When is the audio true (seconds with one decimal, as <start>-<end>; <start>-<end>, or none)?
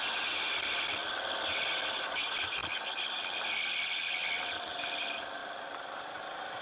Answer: 0.0-6.6